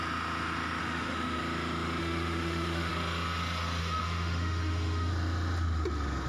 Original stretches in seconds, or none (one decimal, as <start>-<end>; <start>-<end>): 0.0-0.8; 1.4-2.0; 2.9-3.8; 5.1-6.3